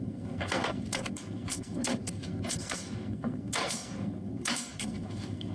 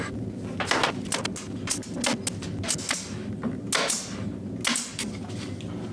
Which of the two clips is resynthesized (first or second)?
first